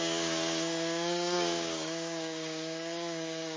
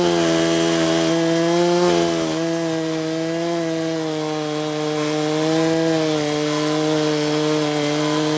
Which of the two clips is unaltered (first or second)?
second